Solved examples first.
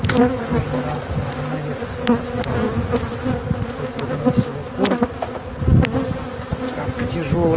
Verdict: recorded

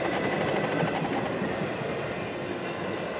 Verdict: recorded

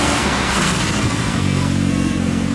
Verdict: remade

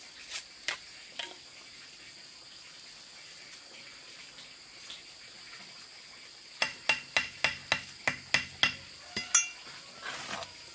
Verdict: recorded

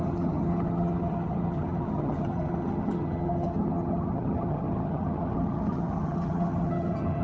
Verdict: remade